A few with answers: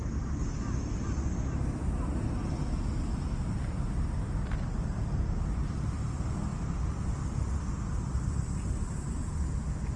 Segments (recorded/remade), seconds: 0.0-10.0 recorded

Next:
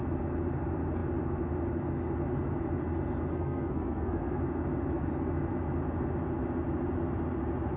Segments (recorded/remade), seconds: 0.0-3.3 recorded; 3.3-4.4 remade; 4.4-7.8 recorded

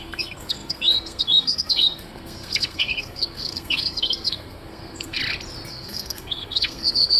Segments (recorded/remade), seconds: 0.0-5.2 remade; 5.2-5.7 recorded; 5.7-7.2 remade

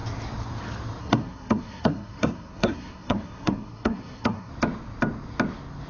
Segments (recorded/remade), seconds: 0.0-1.0 recorded; 1.0-4.5 remade; 4.5-5.9 recorded

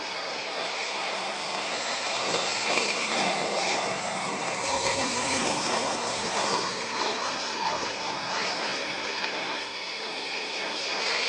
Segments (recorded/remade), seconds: 0.0-11.3 remade

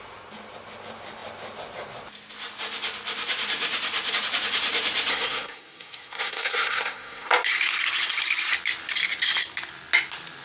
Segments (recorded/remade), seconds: 0.0-5.1 recorded; 5.1-7.3 remade; 7.3-10.4 recorded

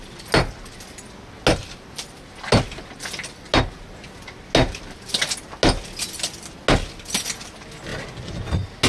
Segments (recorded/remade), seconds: 0.0-8.9 recorded